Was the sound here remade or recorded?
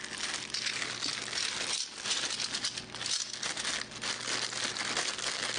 recorded